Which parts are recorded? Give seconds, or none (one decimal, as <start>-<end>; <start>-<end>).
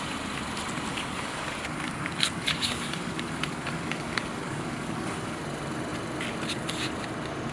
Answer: 0.0-0.9; 5.4-7.5